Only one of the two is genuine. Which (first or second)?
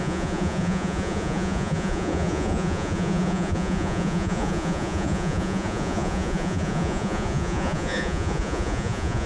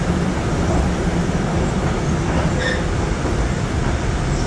second